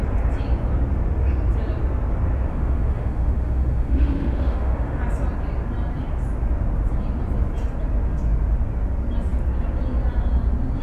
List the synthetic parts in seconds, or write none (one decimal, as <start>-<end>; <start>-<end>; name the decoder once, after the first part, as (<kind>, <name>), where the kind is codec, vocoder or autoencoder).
2.5-5.0 (autoencoder, DAC-VAE)